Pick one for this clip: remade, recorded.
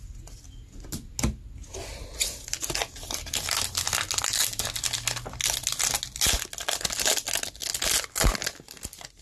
recorded